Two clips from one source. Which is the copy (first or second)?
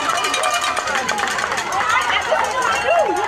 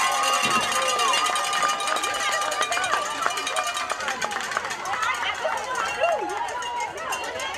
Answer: first